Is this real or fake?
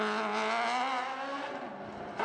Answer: real